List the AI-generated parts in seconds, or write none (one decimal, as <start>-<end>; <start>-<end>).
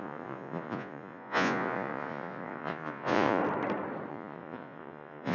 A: 0.0-3.4; 4.1-5.3